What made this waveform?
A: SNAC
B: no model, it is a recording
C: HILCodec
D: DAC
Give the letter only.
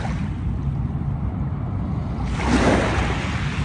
B